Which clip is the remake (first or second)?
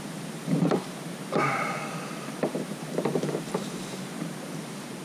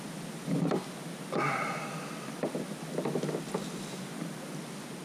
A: first